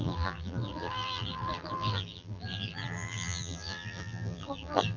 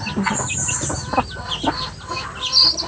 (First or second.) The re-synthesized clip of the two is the first